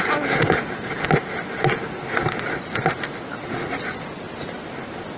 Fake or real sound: real